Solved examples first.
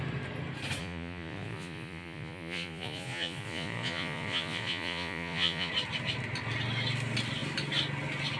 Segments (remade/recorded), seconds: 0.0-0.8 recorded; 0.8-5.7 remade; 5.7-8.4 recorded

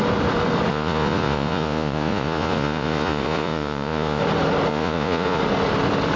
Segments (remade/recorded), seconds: 0.0-0.7 recorded; 0.7-4.2 remade; 4.2-4.7 recorded; 4.7-5.4 remade; 5.4-6.2 recorded

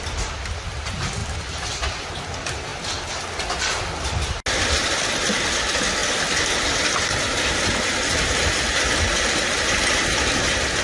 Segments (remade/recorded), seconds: 0.0-10.8 recorded

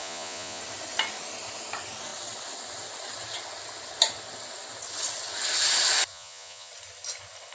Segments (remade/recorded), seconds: 0.0-0.6 remade; 0.6-6.1 recorded; 6.1-6.7 remade; 6.7-7.5 recorded

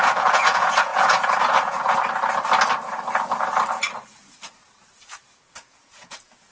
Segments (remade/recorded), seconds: 0.0-1.9 remade; 1.9-4.9 recorded; 4.9-6.5 remade

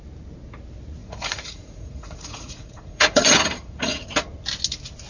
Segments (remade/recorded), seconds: 0.0-1.0 recorded; 1.0-4.1 remade; 4.1-5.1 recorded